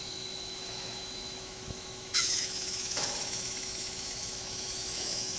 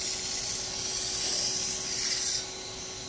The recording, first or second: second